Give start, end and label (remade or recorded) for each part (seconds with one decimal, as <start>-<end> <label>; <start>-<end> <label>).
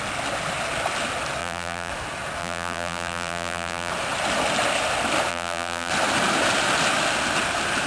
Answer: 0.0-1.4 recorded; 1.4-1.9 remade; 1.9-2.4 recorded; 2.4-3.9 remade; 3.9-5.3 recorded; 5.3-5.9 remade; 5.9-7.9 recorded